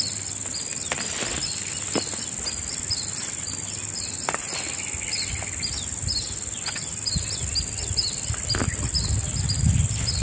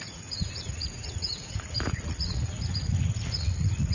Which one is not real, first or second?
second